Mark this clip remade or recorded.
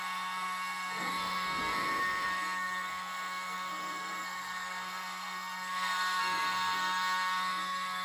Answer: remade